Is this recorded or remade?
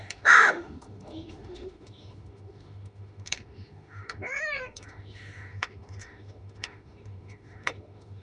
remade